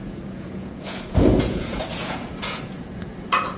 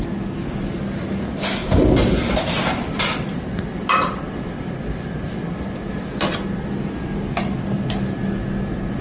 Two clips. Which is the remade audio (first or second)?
first